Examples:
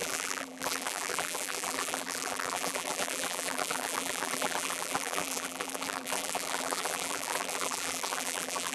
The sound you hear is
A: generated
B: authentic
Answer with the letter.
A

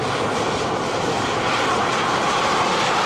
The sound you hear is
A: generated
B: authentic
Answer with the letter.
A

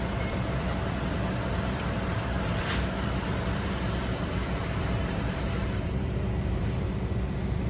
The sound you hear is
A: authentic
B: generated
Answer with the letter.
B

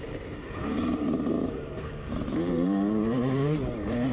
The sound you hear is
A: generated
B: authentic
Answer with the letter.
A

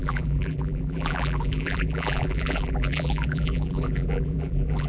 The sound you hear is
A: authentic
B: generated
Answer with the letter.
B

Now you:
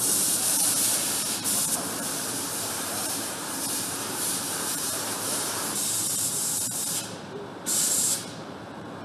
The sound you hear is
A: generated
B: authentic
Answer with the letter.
A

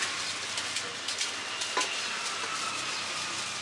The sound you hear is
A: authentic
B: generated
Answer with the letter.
A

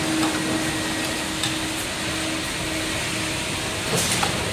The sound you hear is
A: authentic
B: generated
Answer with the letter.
A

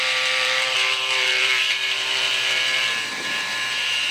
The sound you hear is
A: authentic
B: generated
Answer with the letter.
B